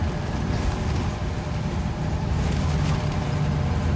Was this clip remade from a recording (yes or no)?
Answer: no